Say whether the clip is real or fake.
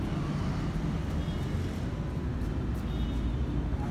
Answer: real